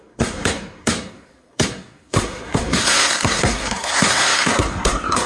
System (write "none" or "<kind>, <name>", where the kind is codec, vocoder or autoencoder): codec, SNAC